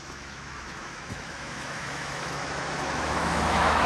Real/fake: fake